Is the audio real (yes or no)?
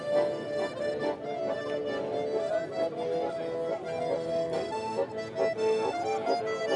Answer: yes